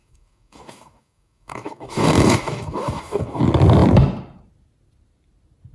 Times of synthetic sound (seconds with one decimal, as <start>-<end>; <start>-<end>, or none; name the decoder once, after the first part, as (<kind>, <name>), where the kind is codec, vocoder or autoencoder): 0.0-3.4 (codec, DAC)